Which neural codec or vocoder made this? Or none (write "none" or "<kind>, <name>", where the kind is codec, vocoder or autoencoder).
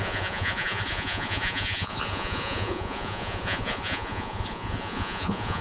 vocoder, Vocos